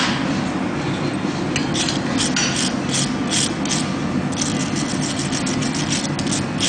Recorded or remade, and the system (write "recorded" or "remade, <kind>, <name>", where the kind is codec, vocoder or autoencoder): recorded